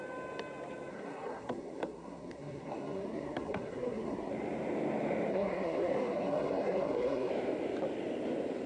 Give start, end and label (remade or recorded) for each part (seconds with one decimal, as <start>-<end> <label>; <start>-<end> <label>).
0.0-0.9 recorded; 0.9-4.3 remade; 4.3-5.3 recorded; 5.3-7.3 remade; 7.3-8.7 recorded